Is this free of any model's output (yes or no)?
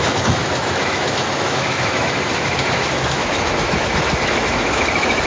no